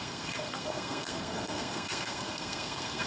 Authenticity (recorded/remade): remade